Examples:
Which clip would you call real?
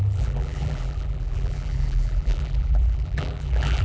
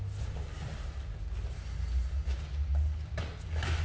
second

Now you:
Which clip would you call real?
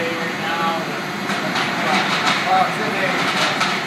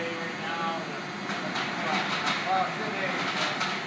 second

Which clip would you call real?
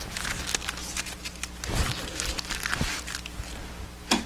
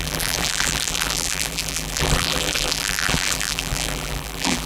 first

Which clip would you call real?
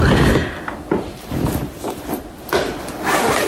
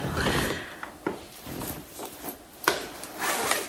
first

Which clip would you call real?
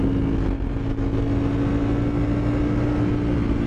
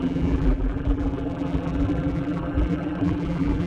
first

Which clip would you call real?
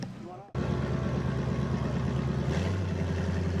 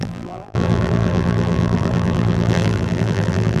first